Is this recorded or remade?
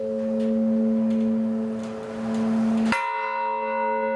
recorded